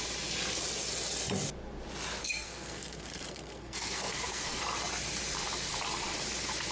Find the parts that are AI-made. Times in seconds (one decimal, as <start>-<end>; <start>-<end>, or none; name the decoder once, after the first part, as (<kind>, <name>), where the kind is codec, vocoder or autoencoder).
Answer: 2.2-4.6 (codec, SNAC)